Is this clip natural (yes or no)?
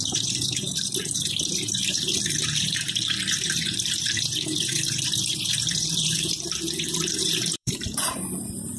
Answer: no